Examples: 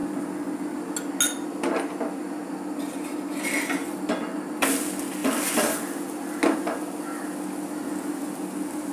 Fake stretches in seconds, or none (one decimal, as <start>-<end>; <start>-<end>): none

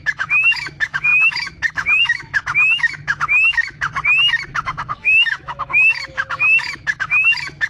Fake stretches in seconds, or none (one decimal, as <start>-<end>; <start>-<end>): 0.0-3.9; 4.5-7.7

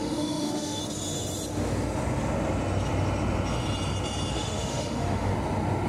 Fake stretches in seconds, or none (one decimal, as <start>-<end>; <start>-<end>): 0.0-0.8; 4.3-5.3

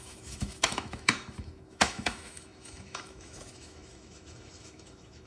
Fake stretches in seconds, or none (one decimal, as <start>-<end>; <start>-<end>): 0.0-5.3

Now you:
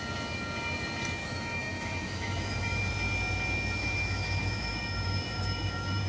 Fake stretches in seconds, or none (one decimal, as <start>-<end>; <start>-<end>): 1.2-2.9; 3.8-6.1

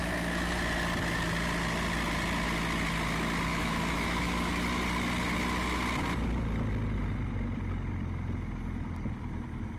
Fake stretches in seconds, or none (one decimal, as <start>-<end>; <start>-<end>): 3.5-4.5

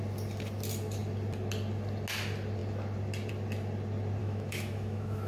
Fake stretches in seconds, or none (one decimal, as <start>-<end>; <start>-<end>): 4.2-5.3